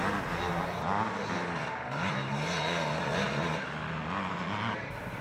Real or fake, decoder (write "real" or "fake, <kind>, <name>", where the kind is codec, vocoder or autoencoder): real